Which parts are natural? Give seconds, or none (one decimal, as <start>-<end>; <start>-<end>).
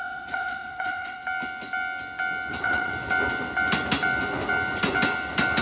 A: 1.2-2.5; 2.9-5.6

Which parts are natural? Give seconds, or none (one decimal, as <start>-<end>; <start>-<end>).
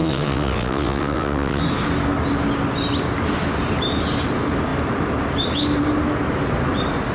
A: 1.6-7.1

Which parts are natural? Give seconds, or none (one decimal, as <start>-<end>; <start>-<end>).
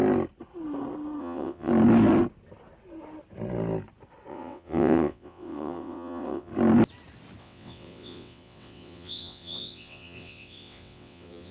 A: 0.0-1.2; 1.7-4.3; 6.5-7.4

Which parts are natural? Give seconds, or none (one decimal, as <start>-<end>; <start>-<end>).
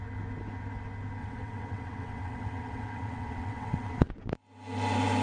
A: 0.0-1.2; 4.3-5.2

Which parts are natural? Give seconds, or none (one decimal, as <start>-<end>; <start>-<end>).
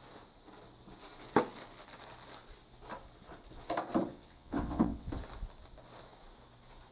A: 0.0-4.1; 5.1-6.9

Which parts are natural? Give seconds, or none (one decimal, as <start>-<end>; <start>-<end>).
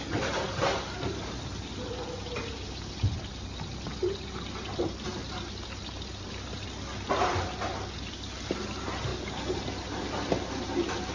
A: 0.0-11.1